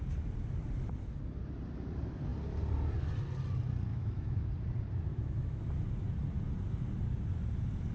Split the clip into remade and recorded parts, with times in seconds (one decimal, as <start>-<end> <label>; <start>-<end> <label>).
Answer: 0.0-3.9 recorded; 3.9-4.5 remade; 4.5-5.1 recorded; 5.1-5.6 remade; 5.6-7.9 recorded